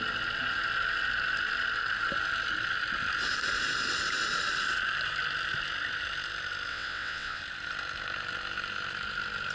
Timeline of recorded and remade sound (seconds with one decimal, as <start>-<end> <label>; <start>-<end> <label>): 0.0-6.7 recorded; 6.7-7.4 remade; 7.4-9.5 recorded